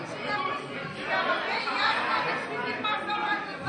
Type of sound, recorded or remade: recorded